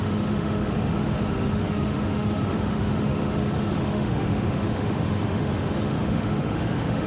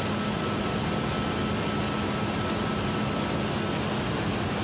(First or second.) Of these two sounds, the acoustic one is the second